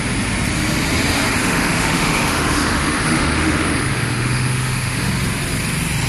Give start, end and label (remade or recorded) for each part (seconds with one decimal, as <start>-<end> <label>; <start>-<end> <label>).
0.0-1.4 recorded; 1.4-5.1 remade; 5.1-6.1 recorded